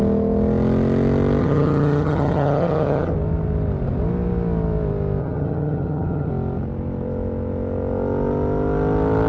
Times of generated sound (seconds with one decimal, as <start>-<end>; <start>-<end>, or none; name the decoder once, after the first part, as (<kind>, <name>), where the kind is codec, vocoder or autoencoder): 1.4-3.1 (vocoder, HiFi-GAN); 5.2-6.3